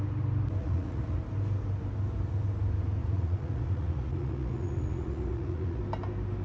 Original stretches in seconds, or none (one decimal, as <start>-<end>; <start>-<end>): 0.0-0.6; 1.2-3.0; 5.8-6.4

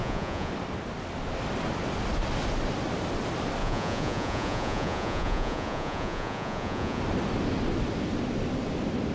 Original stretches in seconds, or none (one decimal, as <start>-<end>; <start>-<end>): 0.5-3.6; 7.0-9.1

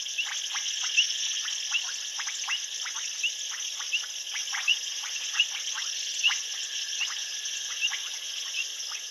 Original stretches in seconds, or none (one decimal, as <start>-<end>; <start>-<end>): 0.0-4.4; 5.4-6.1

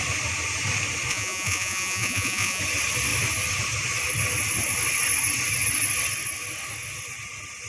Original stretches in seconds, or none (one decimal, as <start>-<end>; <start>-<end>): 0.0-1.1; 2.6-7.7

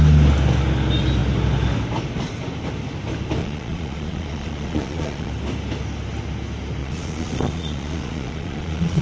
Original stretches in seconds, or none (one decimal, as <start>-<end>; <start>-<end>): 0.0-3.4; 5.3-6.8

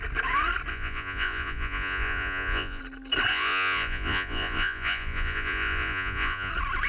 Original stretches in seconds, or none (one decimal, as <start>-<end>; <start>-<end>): 0.0-0.7; 2.8-3.3; 6.5-6.9